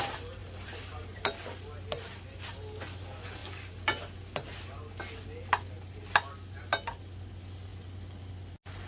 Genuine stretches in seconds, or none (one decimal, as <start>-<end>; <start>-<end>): 0.0-0.4; 1.0-8.9

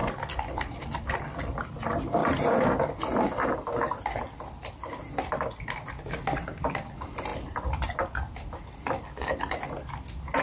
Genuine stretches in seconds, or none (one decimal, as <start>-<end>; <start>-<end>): 0.0-10.4

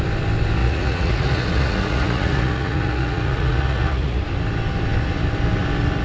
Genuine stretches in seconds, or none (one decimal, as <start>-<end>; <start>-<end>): 0.0-0.6; 4.2-6.0

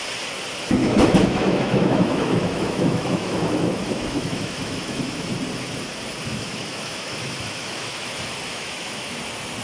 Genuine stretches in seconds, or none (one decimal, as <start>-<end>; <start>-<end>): 0.0-0.8; 5.3-6.3; 8.1-8.5; 9.2-9.6

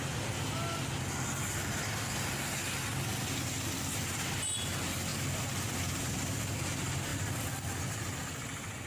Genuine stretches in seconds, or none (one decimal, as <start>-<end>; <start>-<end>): 0.0-5.1; 6.4-8.9

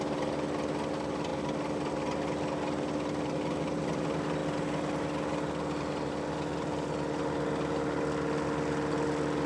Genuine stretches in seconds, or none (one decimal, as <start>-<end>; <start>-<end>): 0.0-9.5

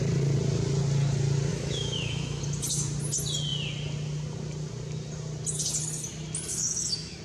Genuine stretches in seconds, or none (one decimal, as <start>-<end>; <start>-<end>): 0.0-1.5; 2.4-6.5

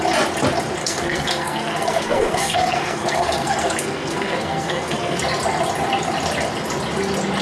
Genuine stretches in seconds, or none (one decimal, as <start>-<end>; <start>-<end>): 0.0-0.8; 5.2-7.4